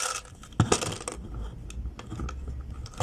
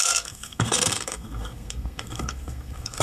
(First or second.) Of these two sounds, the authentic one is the first